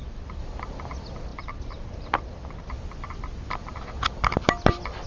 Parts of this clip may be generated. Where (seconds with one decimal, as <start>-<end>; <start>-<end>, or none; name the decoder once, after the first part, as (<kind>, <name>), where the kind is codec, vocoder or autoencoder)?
none